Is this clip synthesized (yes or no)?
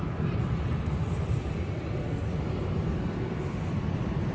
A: yes